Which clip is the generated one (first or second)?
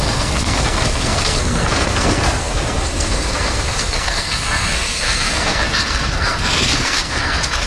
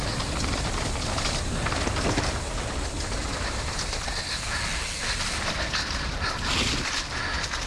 first